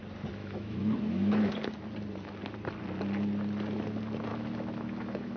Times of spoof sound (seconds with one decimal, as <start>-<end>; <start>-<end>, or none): 0.4-1.5; 4.3-5.4